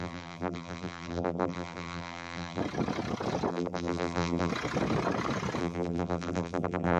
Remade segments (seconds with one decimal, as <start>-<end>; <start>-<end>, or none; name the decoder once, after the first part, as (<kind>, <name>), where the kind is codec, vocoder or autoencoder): 0.0-2.6 (vocoder, BigVGAN v2); 3.5-4.5; 5.6-7.0